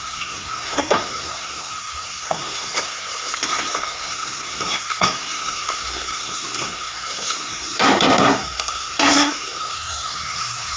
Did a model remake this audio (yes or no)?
yes